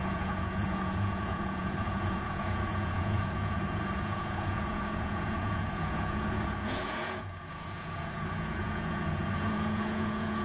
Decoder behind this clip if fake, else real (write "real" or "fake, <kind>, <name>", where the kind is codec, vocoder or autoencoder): fake, vocoder, Vocos